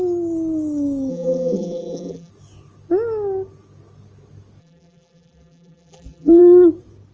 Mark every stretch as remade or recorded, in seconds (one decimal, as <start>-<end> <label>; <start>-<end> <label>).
0.0-1.1 recorded; 1.1-2.3 remade; 2.3-4.6 recorded; 4.6-6.4 remade; 6.4-7.1 recorded